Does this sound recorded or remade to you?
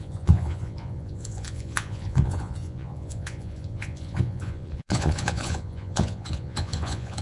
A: remade